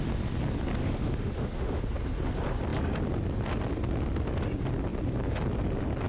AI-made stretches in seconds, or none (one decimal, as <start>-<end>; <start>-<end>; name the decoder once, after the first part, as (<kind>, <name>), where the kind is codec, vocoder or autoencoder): 0.8-1.8 (autoencoder, DAC-VAE)